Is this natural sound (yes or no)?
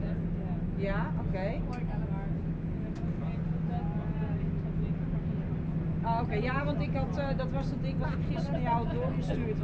yes